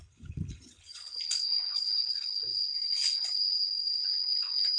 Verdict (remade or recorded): remade